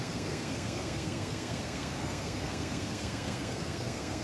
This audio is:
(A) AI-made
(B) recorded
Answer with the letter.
A